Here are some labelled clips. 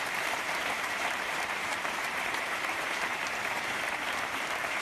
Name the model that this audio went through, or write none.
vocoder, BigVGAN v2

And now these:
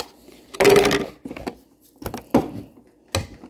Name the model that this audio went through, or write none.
none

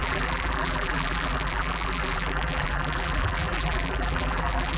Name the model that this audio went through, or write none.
vocoder, BigVGAN v2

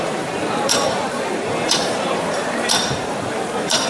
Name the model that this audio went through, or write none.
vocoder, BigVGAN v2